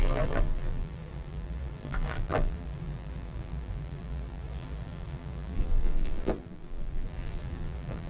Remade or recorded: remade